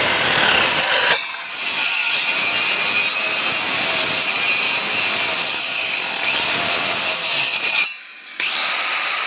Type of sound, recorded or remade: recorded